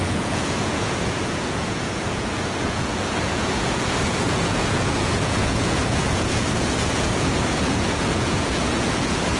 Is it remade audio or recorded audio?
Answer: remade